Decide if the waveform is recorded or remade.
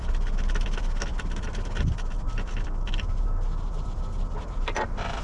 recorded